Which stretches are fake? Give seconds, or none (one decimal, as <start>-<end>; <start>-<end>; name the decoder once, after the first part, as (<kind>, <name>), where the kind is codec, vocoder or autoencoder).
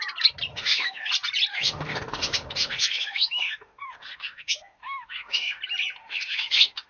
0.5-1.1 (autoencoder, DAC-VAE); 1.5-5.6; 6.0-6.9